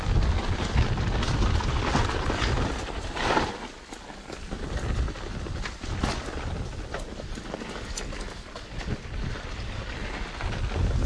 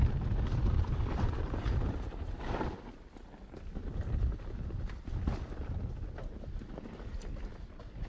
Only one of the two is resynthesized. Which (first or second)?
second